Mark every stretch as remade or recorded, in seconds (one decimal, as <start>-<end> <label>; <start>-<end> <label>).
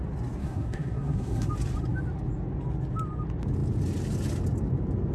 0.0-0.4 recorded; 0.4-1.5 remade; 1.5-5.1 recorded